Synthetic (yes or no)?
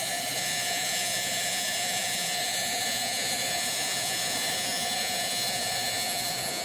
yes